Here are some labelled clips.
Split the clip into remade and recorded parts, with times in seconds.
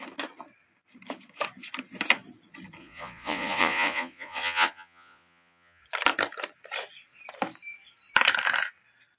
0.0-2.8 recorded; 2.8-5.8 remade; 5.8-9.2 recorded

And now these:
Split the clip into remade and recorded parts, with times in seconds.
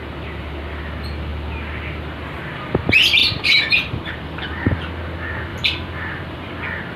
0.0-3.2 recorded; 3.2-4.9 remade; 4.9-5.5 recorded; 5.5-6.5 remade; 6.5-7.0 recorded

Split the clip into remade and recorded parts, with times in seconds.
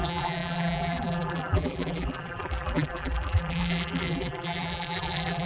0.0-5.5 remade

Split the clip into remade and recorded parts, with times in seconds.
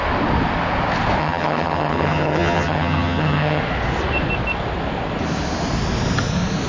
0.0-1.2 recorded; 1.2-3.6 remade; 3.6-6.7 recorded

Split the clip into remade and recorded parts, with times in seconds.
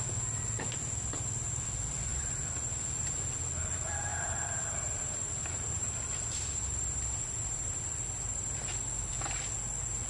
0.0-4.1 recorded; 4.1-9.1 remade; 9.1-10.1 recorded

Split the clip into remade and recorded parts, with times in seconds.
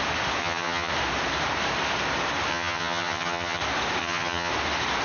0.0-0.4 recorded; 0.4-0.9 remade; 0.9-2.5 recorded; 2.5-3.6 remade; 3.6-4.0 recorded; 4.0-4.5 remade; 4.5-5.0 recorded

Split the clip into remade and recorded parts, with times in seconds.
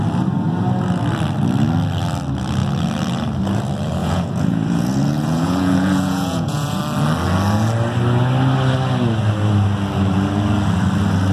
0.0-4.0 recorded; 4.0-6.8 remade; 6.8-11.3 recorded